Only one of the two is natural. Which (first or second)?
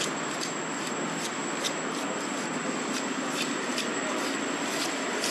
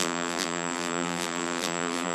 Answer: first